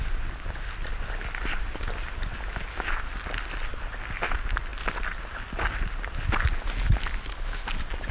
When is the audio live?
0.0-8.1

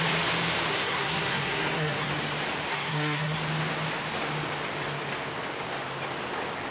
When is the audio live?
0.0-0.7; 2.1-2.7; 3.4-6.7

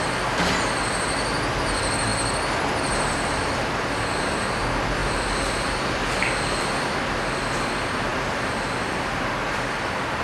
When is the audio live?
0.0-10.2